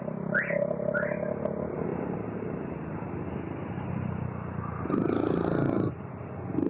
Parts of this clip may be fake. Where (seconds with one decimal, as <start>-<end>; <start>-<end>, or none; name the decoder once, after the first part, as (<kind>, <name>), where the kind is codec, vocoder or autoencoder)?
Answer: none